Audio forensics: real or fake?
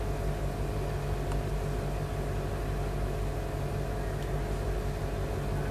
real